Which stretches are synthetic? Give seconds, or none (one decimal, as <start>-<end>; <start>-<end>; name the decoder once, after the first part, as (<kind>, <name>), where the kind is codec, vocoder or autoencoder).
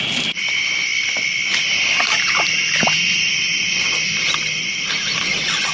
none